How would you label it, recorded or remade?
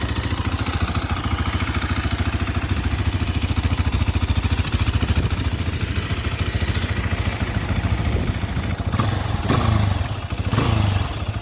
recorded